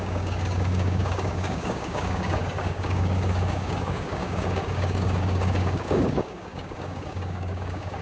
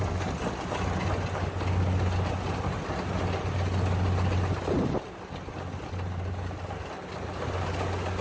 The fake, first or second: first